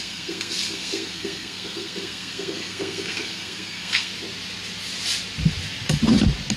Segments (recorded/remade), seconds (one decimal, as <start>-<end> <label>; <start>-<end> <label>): 0.0-4.1 remade; 4.1-6.6 recorded